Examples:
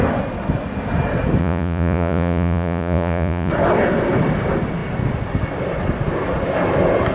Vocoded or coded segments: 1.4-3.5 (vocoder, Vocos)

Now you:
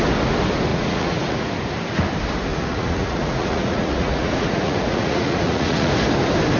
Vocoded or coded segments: 0.7-1.5 (vocoder, Vocos); 2.5-5.9

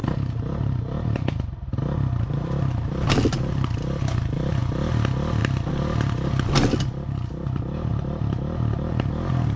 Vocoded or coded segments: 0.0-4.6 (vocoder, BigVGAN v2); 7.9-9.1